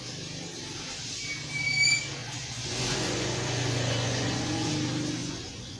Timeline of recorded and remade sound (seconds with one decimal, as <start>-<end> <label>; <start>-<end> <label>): 0.0-2.2 recorded; 2.2-4.7 remade; 4.7-5.2 recorded; 5.2-5.8 remade